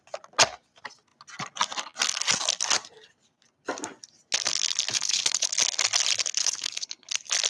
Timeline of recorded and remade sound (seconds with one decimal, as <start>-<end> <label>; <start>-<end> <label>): 0.0-4.9 recorded; 4.9-5.5 remade; 5.5-6.4 recorded; 6.4-7.1 remade; 7.1-7.5 recorded